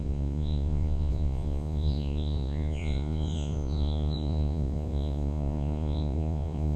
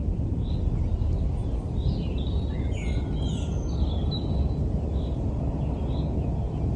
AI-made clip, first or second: first